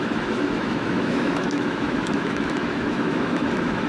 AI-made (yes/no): yes